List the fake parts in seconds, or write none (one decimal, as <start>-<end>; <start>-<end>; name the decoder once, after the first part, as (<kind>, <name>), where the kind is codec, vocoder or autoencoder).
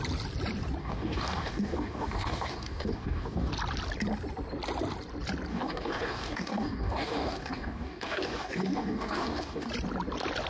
0.8-3.5 (codec, DAC); 5.5-9.7